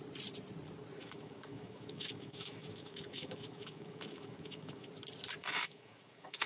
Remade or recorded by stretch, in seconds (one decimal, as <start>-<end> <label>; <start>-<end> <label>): 0.0-1.0 recorded; 1.0-4.9 remade; 4.9-5.4 recorded; 5.4-6.5 remade